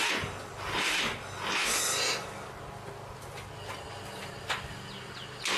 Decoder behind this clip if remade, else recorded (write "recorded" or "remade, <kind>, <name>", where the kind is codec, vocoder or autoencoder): recorded